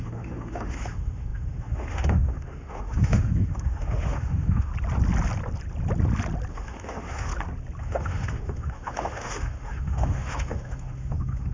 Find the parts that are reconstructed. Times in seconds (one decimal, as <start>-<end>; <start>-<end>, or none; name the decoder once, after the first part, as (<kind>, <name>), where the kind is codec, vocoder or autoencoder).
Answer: 0.0-4.7 (autoencoder, DAC-VAE); 6.5-7.3; 7.8-11.5